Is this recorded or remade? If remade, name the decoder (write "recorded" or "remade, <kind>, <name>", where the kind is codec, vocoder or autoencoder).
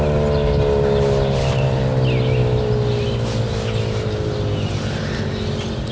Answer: recorded